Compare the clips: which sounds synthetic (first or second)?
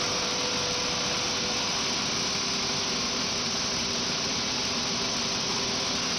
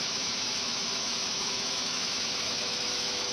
second